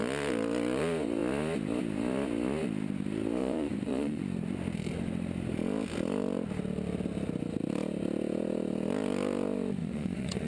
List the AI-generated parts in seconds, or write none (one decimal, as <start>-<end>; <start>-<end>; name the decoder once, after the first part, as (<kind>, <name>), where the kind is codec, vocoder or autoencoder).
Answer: 3.4-4.2 (vocoder, Vocos); 9.8-10.5